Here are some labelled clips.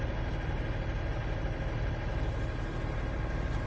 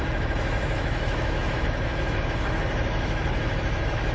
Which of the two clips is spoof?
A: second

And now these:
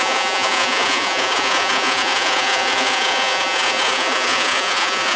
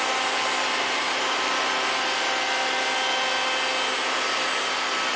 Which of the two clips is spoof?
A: first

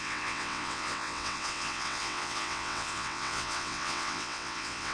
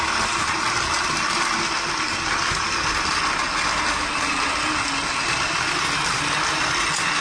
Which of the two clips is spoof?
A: first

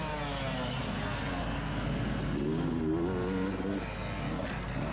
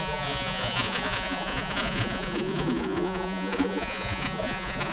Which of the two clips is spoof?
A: second